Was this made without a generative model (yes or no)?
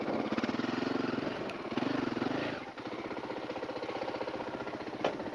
yes